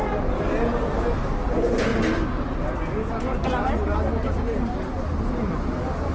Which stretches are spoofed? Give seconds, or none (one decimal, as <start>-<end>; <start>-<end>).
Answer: none